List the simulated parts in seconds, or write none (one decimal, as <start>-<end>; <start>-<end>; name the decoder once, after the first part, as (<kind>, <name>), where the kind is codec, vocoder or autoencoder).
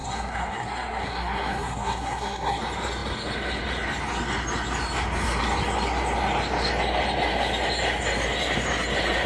0.0-2.6 (codec, SNAC)